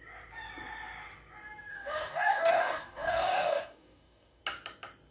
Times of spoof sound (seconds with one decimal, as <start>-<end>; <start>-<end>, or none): 1.7-4.4